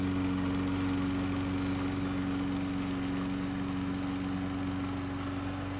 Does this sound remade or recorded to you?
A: recorded